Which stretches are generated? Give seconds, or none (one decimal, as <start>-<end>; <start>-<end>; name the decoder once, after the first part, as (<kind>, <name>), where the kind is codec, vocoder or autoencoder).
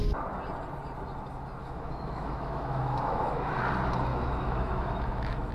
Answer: 1.6-3.6 (autoencoder, DAC-VAE); 4.1-5.5